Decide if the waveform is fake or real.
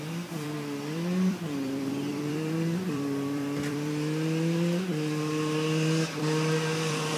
fake